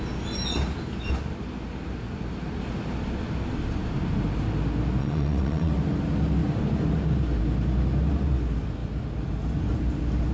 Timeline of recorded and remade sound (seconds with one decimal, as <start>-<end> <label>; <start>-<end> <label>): 0.0-5.0 recorded; 5.0-5.7 remade; 5.7-10.3 recorded